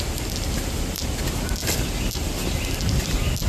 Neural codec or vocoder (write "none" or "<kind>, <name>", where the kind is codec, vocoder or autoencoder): none